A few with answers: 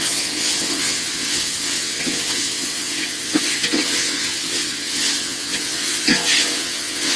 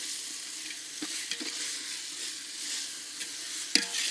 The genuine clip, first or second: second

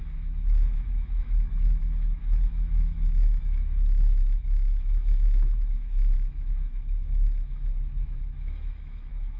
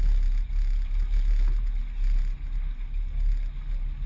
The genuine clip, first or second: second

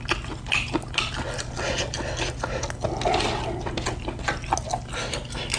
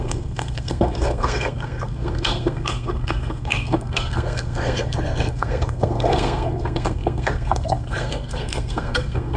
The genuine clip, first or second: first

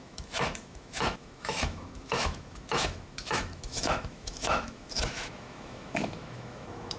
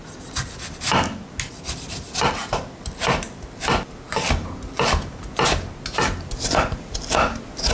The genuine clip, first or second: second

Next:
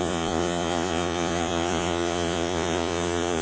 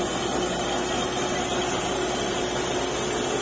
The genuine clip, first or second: second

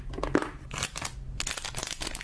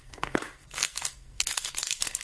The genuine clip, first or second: first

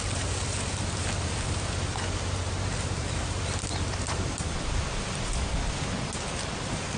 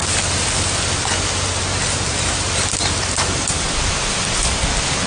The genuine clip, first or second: second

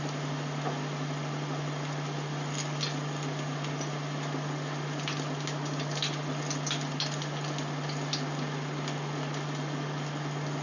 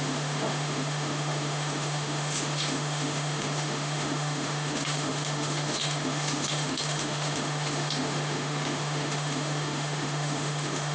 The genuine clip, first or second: first